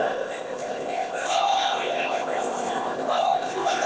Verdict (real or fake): fake